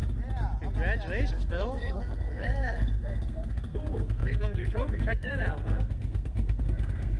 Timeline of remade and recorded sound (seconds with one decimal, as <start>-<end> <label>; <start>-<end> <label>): 0.0-1.3 recorded; 1.3-7.2 remade